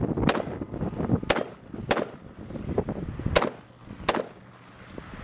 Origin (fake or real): real